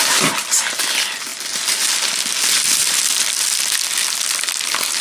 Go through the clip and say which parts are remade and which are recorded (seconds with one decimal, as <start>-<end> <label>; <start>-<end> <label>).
0.0-5.0 recorded